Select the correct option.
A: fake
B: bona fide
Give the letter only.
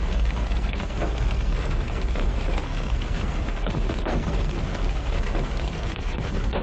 A